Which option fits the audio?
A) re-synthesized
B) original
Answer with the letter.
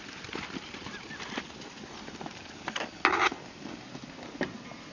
B